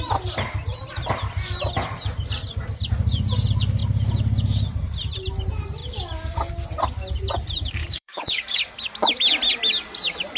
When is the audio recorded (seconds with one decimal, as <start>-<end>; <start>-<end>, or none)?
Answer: 0.0-7.8; 8.6-10.4